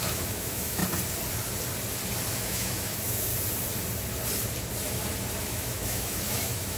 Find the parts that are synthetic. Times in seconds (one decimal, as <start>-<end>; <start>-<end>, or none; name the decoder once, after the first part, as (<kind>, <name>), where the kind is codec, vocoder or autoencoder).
0.0-0.8 (autoencoder, DAC-VAE); 2.3-3.3; 5.4-6.8